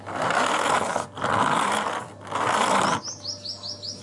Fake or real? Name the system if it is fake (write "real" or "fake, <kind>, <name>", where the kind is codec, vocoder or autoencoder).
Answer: real